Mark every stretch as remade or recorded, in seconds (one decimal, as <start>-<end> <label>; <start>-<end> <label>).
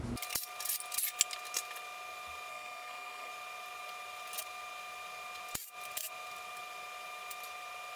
0.0-2.5 recorded; 2.5-3.3 remade; 3.3-8.0 recorded